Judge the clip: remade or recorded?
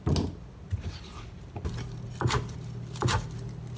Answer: recorded